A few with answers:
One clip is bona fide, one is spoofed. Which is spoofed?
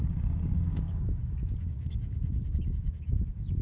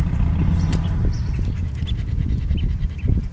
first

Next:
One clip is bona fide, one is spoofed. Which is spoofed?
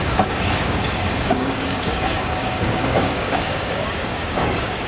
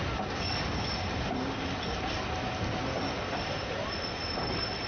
first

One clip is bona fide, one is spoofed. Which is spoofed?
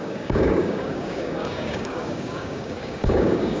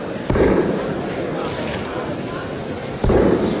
first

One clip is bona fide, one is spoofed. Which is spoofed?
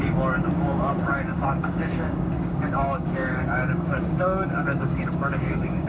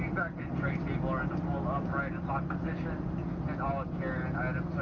first